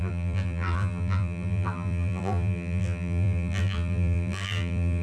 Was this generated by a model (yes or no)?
yes